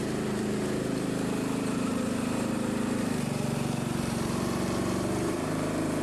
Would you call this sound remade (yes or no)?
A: yes